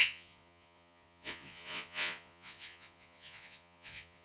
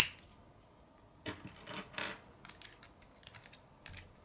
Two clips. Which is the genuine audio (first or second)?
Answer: second